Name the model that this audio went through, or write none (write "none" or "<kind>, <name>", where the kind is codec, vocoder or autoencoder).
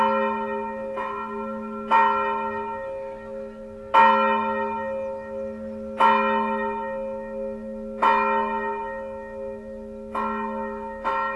none